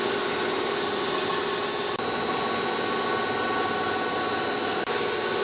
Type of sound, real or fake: real